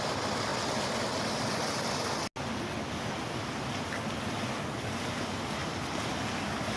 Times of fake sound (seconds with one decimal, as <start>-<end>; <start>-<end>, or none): 5.6-6.1